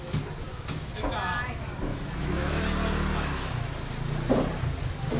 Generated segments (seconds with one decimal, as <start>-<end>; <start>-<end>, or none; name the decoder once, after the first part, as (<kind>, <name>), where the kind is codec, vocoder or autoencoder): 0.5-1.1 (autoencoder, DAC-VAE); 1.9-2.6

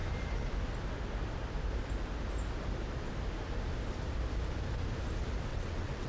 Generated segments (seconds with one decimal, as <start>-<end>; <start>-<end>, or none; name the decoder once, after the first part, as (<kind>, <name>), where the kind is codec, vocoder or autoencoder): 5.5-6.1 (vocoder, WaveNeXt)

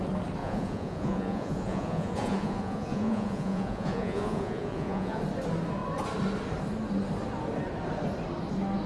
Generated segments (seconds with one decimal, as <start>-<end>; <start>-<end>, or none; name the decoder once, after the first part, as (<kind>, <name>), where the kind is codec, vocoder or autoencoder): 0.4-5.2 (vocoder, Vocos)